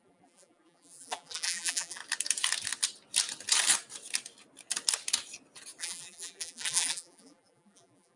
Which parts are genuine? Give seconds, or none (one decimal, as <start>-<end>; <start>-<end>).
2.0-5.8